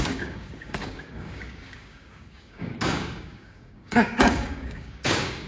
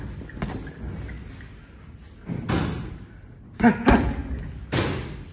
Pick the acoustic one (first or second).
second